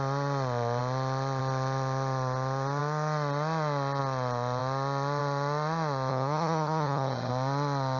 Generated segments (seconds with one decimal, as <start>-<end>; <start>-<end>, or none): 6.1-7.3